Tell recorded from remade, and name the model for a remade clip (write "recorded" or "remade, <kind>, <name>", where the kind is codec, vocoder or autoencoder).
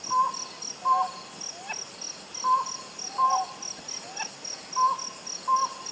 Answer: recorded